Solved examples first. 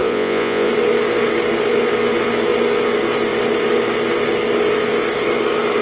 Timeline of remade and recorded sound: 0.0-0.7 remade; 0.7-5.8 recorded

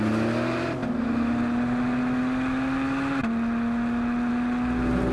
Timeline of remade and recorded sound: 0.0-5.1 recorded

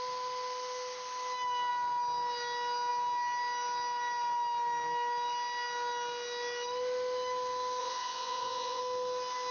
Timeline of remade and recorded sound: 0.0-7.8 recorded; 7.8-8.8 remade; 8.8-9.5 recorded

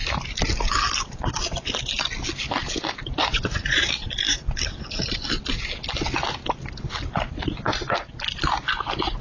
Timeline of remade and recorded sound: 0.0-3.2 recorded; 3.2-3.9 remade; 3.9-9.2 recorded

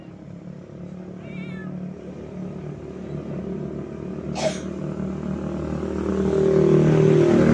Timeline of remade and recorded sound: 0.0-7.5 recorded

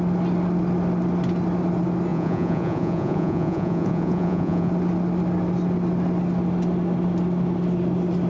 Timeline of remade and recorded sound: 0.0-2.1 recorded; 2.1-4.7 remade; 4.7-8.3 recorded

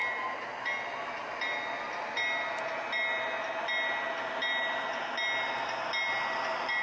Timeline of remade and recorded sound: 0.0-6.8 recorded